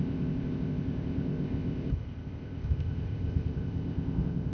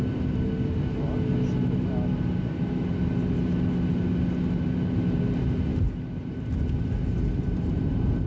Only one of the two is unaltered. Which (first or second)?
second